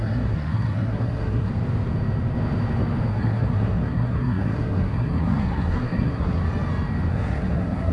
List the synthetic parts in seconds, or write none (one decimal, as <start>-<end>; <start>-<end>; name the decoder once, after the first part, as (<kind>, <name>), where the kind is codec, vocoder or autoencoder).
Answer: 0.0-1.5 (codec, SNAC); 3.1-6.4; 7.1-7.9